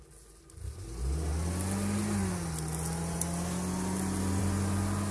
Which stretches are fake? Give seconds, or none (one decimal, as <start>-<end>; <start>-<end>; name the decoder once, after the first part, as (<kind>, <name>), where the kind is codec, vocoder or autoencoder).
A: none